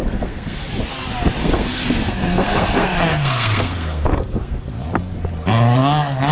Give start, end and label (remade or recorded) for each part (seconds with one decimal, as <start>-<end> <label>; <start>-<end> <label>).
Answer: 0.0-0.7 remade; 0.7-1.4 recorded; 1.4-4.6 remade; 4.6-6.3 recorded